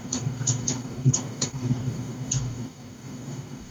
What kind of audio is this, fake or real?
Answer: fake